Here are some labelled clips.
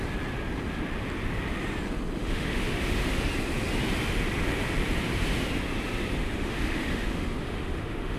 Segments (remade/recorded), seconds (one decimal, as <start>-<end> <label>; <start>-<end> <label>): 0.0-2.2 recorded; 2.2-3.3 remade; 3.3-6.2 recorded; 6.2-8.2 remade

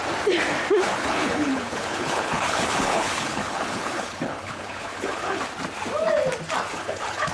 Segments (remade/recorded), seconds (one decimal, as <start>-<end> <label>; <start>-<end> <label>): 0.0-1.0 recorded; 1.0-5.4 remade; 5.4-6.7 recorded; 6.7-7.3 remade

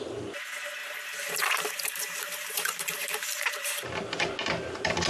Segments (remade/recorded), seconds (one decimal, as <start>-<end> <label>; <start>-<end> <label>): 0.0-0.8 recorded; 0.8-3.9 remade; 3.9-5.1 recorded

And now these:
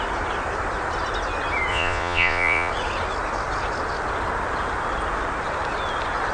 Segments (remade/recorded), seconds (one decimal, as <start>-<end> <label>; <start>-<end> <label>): 0.0-1.7 recorded; 1.7-2.7 remade; 2.7-6.3 recorded